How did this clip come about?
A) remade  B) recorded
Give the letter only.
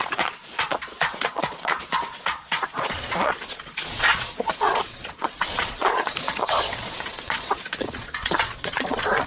A